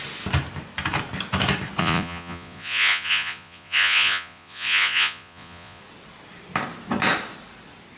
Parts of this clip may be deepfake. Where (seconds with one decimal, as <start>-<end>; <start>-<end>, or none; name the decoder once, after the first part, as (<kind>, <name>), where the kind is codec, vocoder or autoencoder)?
1.8-5.8 (vocoder, Vocos)

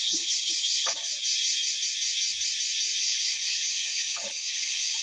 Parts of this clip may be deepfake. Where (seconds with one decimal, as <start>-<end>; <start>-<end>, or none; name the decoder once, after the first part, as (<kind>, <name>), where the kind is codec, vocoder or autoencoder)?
0.0-1.1 (codec, HILCodec); 3.0-5.0

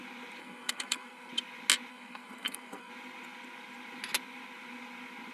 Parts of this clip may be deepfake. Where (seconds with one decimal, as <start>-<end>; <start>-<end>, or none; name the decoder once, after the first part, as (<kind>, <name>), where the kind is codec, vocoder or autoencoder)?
0.4-1.3 (codec, SNAC); 1.9-2.9